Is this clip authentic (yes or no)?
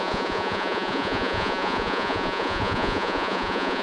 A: no